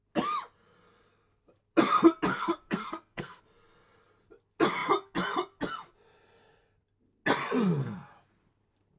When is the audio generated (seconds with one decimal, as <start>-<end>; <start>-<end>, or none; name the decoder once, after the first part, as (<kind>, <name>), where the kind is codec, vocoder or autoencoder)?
2.3-3.4 (codec, SNAC)